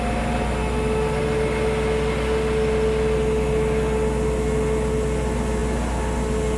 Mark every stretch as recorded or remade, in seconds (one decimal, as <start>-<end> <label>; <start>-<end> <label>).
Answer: 0.0-6.6 recorded